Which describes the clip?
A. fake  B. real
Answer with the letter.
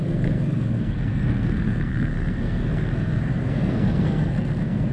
A